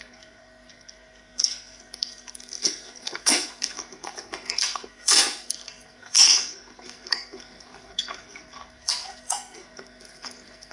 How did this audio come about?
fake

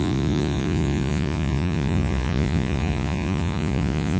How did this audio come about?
fake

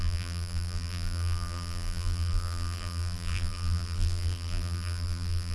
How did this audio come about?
fake